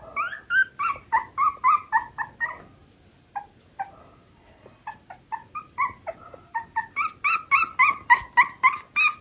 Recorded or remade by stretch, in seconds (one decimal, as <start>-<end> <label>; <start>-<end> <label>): 0.0-9.2 recorded